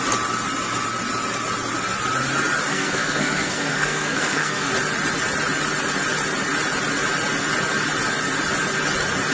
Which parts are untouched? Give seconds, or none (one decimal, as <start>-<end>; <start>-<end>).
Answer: 0.0-2.7; 4.7-9.3